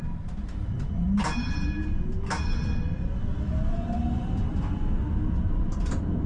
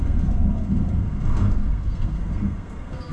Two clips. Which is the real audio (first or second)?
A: first